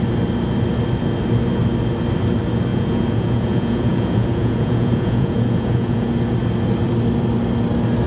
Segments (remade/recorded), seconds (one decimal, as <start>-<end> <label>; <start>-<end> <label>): 0.0-2.7 recorded; 2.7-6.1 remade; 6.1-8.1 recorded